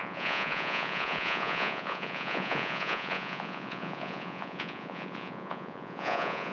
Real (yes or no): no